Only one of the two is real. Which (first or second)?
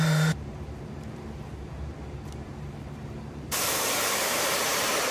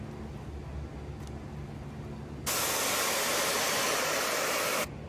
second